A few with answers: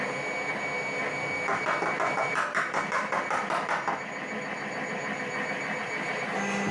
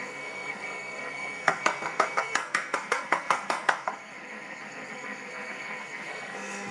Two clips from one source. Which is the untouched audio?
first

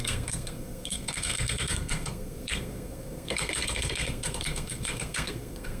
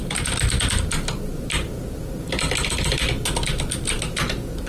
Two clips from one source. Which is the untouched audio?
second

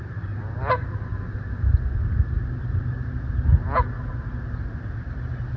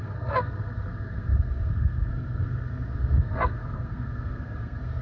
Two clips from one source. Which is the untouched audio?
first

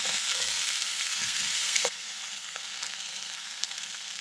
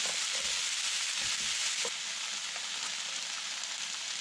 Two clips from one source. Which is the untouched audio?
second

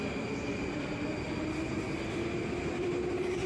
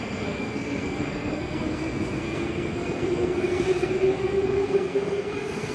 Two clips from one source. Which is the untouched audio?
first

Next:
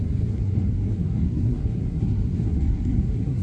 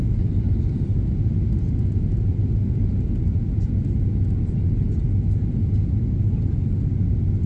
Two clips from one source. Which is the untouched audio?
second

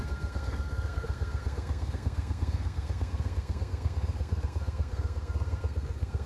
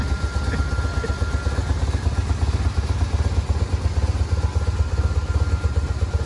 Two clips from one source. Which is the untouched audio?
second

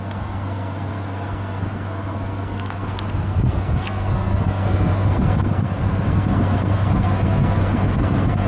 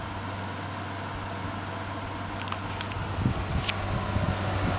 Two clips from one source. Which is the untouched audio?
second